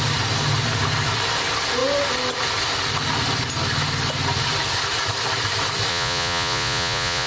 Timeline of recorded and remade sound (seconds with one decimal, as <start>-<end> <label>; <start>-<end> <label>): 0.0-5.9 recorded; 5.9-7.3 remade